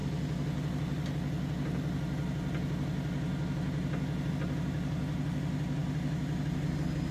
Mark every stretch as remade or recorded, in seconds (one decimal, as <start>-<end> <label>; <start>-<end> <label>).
0.0-7.1 recorded